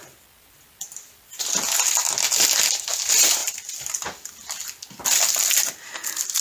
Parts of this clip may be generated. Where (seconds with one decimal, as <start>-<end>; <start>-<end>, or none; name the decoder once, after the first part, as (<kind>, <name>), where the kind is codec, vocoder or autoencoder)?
none

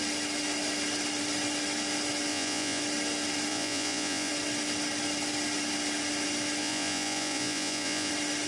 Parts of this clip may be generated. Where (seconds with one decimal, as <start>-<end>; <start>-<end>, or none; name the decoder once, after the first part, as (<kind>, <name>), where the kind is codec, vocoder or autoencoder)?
2.3-2.8 (vocoder, Vocos); 3.5-4.3; 6.6-8.1

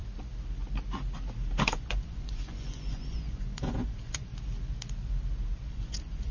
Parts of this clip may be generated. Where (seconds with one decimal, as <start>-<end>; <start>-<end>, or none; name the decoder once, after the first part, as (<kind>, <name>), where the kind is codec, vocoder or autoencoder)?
1.6-4.3 (vocoder, Vocos); 5.7-6.3